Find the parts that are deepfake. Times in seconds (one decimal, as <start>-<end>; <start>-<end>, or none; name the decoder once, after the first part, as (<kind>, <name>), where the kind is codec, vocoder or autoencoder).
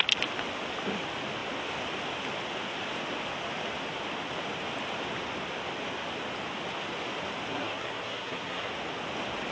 7.5-8.7 (codec, SNAC)